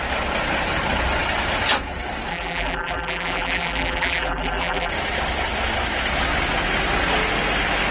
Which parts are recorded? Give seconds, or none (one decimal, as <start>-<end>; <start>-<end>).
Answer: 0.0-2.3; 4.9-7.9